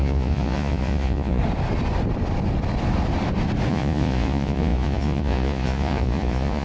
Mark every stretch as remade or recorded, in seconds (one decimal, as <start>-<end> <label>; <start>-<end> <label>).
0.0-1.4 remade; 1.4-3.7 recorded; 3.7-6.6 remade